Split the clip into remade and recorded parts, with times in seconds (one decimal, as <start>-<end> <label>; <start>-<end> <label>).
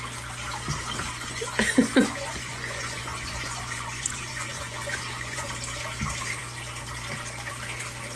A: 0.0-1.2 recorded; 1.2-5.5 remade; 5.5-8.2 recorded